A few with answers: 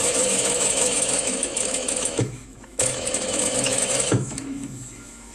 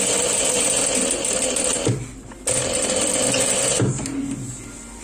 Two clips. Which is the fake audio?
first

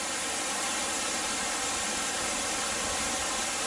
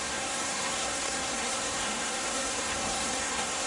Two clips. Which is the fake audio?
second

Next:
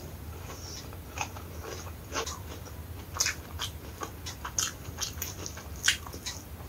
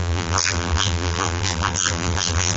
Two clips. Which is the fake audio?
second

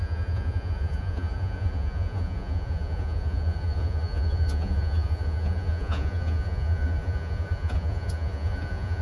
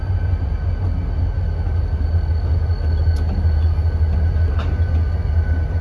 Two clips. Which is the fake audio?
first